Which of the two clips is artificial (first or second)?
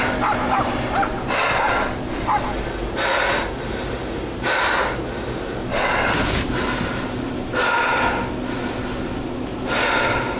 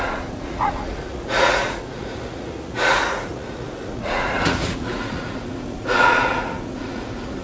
second